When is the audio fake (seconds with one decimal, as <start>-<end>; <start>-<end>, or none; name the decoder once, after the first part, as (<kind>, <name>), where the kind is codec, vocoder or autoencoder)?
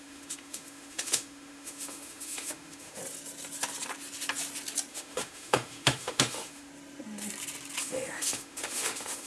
0.0-3.0 (autoencoder, DAC-VAE); 4.9-6.7; 7.8-9.3